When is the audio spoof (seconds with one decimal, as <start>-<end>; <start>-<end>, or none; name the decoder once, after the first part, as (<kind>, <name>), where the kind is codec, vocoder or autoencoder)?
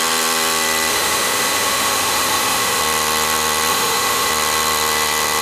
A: 0.9-2.8 (autoencoder, DAC-VAE); 3.7-4.3